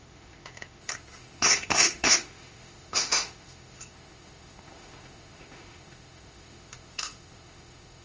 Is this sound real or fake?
fake